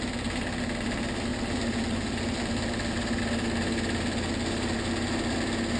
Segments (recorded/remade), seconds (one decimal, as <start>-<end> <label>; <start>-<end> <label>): 0.0-1.3 recorded; 1.3-3.2 remade; 3.2-5.8 recorded